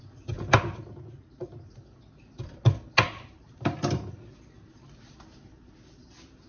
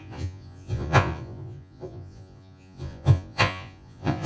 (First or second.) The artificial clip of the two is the second